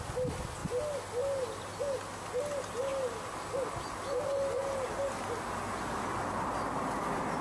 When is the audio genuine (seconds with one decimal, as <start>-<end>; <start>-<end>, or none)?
0.0-7.4